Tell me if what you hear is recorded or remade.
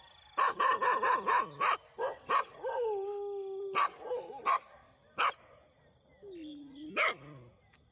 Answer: recorded